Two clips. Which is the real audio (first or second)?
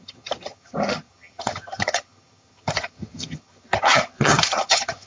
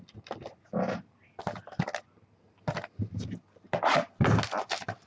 second